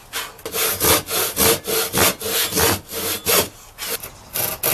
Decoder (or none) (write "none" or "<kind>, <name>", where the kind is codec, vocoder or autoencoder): none